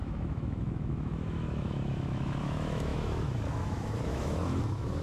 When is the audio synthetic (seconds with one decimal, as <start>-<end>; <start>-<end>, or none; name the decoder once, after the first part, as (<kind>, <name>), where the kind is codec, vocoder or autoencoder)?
0.0-5.0 (autoencoder, DAC-VAE)